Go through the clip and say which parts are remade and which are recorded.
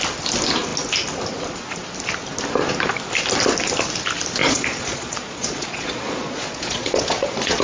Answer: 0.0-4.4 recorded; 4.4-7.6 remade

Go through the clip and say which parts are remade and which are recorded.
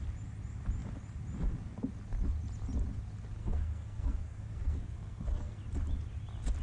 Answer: 0.0-3.4 recorded; 3.4-5.6 remade; 5.6-6.6 recorded